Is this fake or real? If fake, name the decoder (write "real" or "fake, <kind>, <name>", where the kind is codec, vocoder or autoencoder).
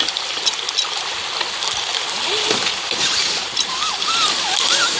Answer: real